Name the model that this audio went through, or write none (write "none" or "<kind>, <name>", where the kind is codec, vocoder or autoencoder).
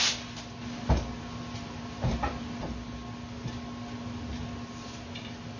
none